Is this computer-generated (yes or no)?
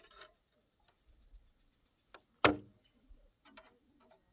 no